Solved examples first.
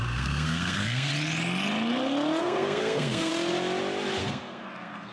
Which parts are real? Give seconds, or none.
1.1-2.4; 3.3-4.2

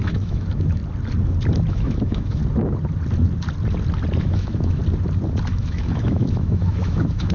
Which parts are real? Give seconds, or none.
0.8-1.7; 2.4-4.2; 4.8-5.5

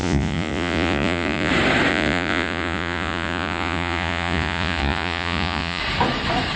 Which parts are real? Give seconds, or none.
1.5-1.9; 5.8-6.6

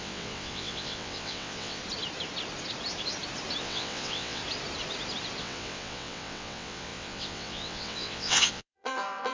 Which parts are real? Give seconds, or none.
1.8-3.6; 4.4-5.4

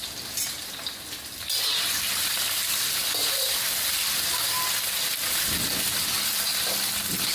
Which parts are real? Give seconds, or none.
0.0-7.3

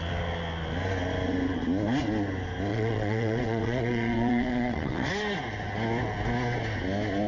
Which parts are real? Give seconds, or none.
0.0-2.7; 5.1-7.3